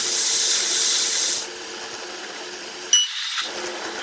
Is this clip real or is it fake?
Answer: real